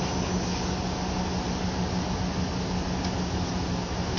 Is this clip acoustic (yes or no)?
yes